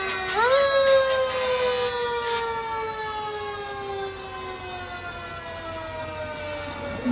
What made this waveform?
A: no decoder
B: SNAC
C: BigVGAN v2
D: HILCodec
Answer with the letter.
A